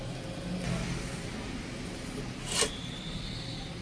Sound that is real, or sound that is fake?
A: real